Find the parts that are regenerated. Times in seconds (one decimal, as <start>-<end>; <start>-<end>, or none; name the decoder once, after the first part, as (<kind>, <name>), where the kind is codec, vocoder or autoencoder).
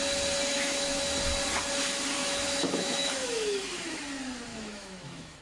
0.5-1.0 (autoencoder, DAC-VAE); 2.2-4.0; 4.5-5.4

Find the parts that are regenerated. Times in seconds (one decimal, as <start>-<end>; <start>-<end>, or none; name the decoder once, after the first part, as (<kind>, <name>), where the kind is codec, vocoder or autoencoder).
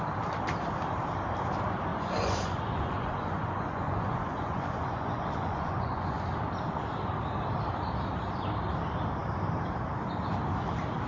1.9-6.2 (vocoder, Vocos)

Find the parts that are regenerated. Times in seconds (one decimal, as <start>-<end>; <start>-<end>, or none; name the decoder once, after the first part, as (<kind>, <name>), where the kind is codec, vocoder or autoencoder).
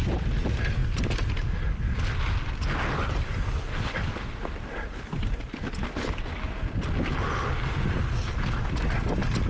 none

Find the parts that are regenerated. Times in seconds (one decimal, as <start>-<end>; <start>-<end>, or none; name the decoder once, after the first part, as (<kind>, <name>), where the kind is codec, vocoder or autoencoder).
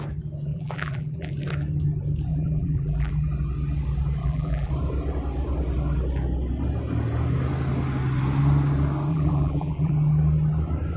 0.5-1.3 (vocoder, BigVGAN v2); 2.3-3.1; 4.2-4.7; 9.1-9.9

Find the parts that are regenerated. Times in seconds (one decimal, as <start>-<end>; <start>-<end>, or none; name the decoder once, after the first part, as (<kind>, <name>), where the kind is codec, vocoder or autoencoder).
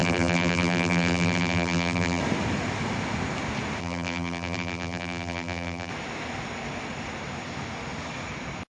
0.0-2.2 (vocoder, BigVGAN v2); 3.8-5.9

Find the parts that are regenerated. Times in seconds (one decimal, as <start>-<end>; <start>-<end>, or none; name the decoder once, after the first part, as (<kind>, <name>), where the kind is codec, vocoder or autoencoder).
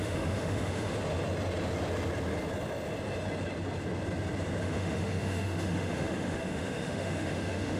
0.0-0.9 (autoencoder, DAC-VAE); 4.6-7.8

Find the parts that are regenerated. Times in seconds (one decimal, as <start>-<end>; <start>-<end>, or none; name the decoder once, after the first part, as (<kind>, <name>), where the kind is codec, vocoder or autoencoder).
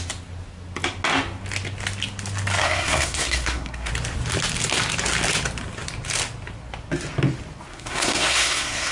2.6-3.9 (codec, SNAC); 7.7-8.9